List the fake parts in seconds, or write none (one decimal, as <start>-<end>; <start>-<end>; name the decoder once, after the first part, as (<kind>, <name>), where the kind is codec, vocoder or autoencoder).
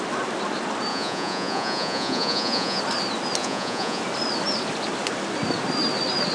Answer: 0.9-2.8 (vocoder, Vocos); 3.4-4.0